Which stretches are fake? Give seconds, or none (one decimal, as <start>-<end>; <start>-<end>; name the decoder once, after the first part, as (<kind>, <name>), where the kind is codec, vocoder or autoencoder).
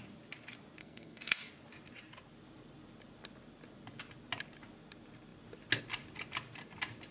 0.8-1.5 (codec, SNAC)